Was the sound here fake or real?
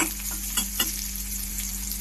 real